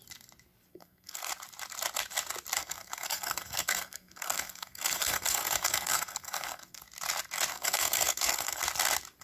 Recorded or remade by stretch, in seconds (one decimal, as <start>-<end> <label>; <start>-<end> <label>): 0.0-0.7 recorded; 0.7-1.3 remade; 1.3-2.6 recorded; 2.6-6.8 remade; 6.8-7.5 recorded; 7.5-8.6 remade; 8.6-9.2 recorded